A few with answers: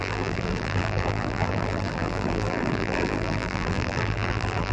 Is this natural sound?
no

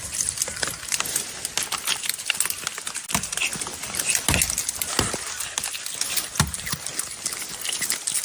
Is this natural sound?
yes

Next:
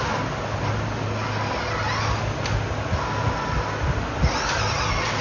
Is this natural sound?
yes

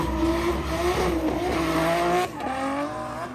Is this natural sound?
yes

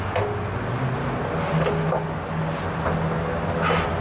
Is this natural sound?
yes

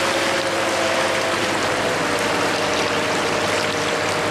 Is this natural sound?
yes